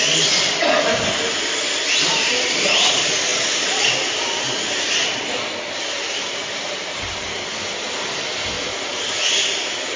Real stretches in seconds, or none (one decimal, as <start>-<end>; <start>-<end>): none